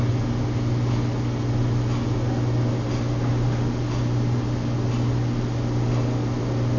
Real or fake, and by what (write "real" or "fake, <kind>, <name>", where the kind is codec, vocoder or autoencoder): real